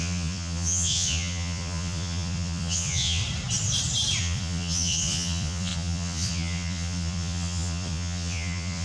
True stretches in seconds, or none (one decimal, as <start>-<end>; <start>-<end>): 3.2-4.2